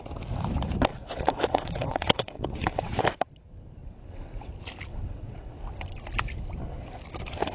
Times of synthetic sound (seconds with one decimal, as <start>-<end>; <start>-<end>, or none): 0.9-3.0; 3.8-4.5; 4.9-5.5